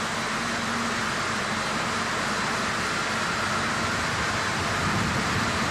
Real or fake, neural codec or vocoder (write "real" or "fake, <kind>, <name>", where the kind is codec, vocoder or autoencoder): real